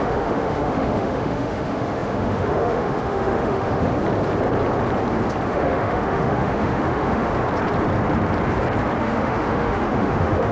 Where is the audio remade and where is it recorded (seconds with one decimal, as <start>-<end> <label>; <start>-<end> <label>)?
0.0-3.9 remade; 3.9-5.5 recorded; 5.5-7.3 remade; 7.3-9.0 recorded; 9.0-10.5 remade